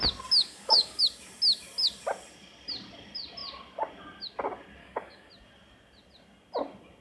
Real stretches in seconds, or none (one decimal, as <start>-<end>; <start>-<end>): 0.0-0.4; 1.0-4.8; 5.3-7.0